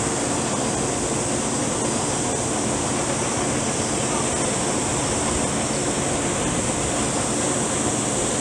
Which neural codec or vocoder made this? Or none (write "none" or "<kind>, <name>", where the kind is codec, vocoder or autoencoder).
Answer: none